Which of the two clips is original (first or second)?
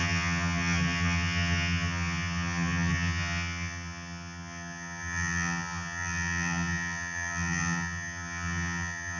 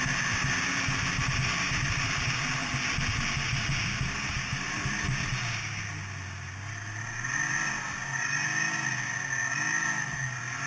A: second